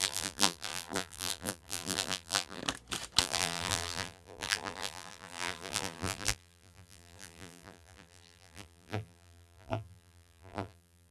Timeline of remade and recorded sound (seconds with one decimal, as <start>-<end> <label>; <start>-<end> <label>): 0.0-2.6 remade; 2.6-3.2 recorded; 3.2-11.1 remade